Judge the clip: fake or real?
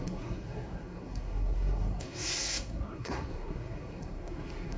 fake